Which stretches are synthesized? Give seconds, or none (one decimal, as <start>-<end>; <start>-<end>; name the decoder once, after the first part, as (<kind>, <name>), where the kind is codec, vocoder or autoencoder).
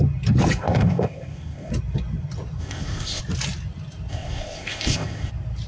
0.6-1.7 (codec, ZipCodec); 2.6-3.2; 4.1-5.3